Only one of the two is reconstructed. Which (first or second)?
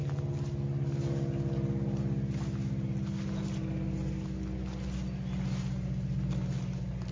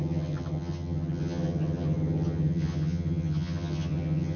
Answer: second